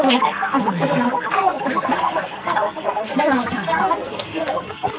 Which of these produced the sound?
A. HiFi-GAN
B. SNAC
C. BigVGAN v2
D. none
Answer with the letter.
B